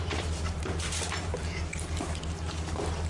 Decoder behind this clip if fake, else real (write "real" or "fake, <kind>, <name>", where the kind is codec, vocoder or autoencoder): fake, vocoder, BigVGAN v2